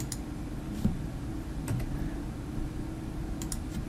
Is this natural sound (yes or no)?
yes